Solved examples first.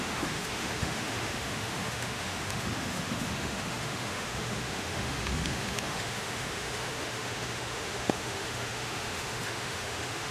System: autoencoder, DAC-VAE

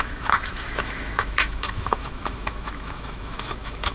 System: autoencoder, DAC-VAE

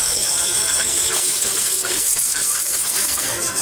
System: codec, SNAC